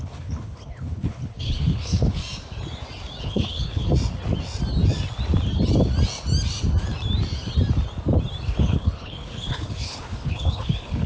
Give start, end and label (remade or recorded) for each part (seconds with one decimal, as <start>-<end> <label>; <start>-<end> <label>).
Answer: 0.0-2.2 remade; 2.2-3.2 recorded; 3.2-3.9 remade; 3.9-8.6 recorded; 8.6-11.1 remade